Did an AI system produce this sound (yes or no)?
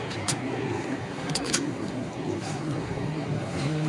yes